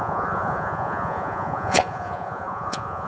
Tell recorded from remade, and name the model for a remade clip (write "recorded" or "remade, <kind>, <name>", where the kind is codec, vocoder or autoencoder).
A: remade, vocoder, Vocos